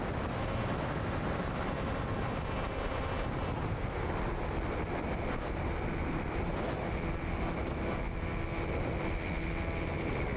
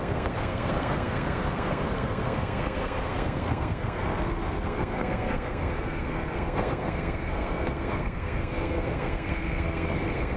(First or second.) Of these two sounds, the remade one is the second